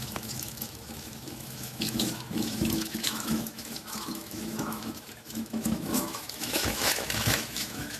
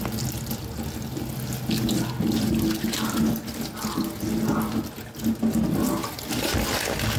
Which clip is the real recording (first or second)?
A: second